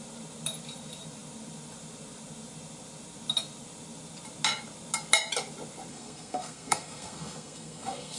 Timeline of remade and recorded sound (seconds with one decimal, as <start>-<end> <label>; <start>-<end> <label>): 0.0-5.9 recorded; 5.9-8.2 remade

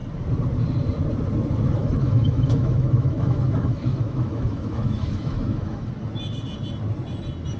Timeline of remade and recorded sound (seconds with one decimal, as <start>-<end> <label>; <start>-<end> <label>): 0.0-1.8 recorded; 1.8-5.9 remade; 5.9-7.6 recorded

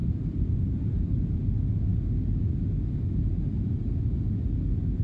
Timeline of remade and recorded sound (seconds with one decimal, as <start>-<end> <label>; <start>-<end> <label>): 0.0-1.2 remade; 1.2-5.0 recorded

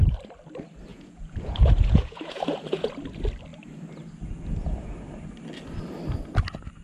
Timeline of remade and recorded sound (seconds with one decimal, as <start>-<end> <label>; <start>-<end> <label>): 0.0-0.9 recorded; 0.9-2.9 remade; 2.9-6.8 recorded

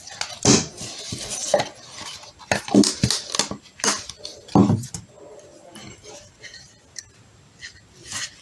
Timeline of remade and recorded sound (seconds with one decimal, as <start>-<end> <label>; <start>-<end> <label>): 0.0-8.4 recorded

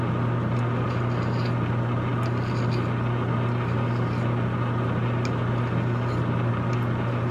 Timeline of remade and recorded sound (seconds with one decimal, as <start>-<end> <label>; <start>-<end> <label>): 0.0-7.3 recorded